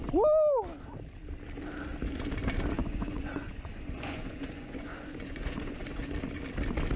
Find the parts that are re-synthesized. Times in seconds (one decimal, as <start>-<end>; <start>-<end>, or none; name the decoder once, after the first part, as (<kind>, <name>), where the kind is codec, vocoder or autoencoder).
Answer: 2.8-6.1 (vocoder, Vocos)